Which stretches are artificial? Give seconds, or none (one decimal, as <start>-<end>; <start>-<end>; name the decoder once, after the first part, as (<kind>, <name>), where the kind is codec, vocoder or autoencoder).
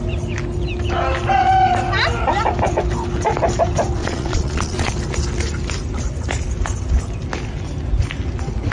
4.0-4.9 (vocoder, Vocos)